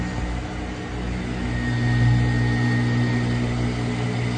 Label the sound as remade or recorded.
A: recorded